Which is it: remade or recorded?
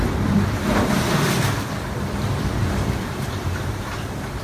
remade